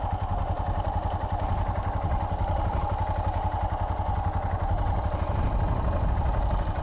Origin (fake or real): real